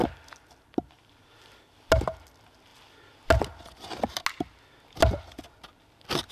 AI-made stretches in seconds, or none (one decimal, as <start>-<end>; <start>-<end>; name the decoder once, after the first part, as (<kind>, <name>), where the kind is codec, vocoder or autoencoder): 0.0-1.9 (vocoder, BigVGAN v2)